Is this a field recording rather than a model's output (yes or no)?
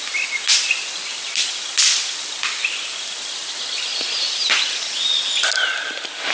yes